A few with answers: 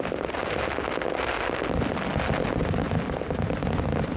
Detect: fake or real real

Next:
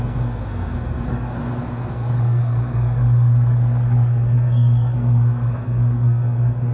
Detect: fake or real fake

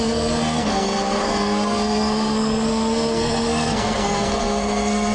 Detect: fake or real fake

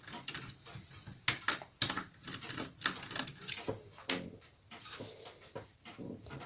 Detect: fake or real real